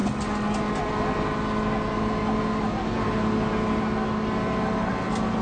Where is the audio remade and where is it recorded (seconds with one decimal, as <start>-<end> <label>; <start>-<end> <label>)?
0.0-5.4 recorded